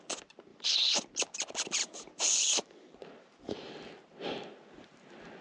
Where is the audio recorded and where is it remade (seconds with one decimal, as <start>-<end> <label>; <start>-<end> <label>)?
0.0-0.5 recorded; 0.5-1.0 remade; 1.0-1.8 recorded; 1.8-3.7 remade; 3.7-5.4 recorded